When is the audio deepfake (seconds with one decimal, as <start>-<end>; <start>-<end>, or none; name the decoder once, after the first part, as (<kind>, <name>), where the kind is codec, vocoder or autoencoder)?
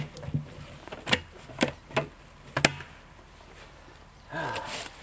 none